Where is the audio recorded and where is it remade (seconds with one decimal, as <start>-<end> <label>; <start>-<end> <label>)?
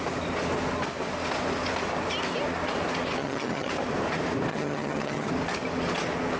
0.0-3.2 recorded; 3.2-3.7 remade; 3.7-4.5 recorded; 4.5-5.3 remade; 5.3-6.4 recorded